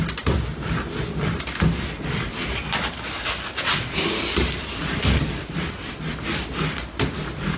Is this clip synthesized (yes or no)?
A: no